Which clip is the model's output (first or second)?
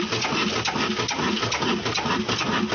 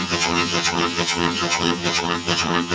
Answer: second